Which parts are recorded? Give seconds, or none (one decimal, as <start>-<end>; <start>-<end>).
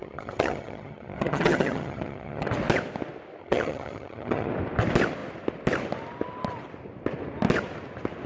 2.5-3.4; 4.5-8.3